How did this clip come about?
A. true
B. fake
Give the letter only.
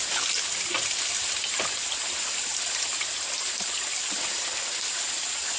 A